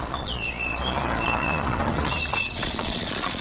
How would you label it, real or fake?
fake